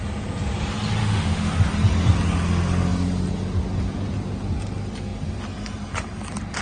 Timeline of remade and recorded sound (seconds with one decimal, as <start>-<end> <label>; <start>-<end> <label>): 0.0-1.0 recorded; 1.0-1.5 remade; 1.5-6.6 recorded